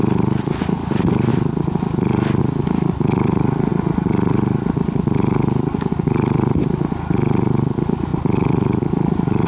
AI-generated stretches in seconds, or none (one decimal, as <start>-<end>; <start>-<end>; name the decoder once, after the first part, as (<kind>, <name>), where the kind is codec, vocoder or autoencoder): 1.3-2.4 (vocoder, BigVGAN v2)

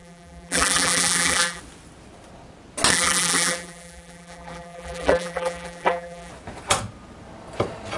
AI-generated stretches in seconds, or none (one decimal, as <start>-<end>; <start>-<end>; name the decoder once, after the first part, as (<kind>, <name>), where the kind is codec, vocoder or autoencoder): 0.0-1.6 (vocoder, BigVGAN v2); 2.9-6.3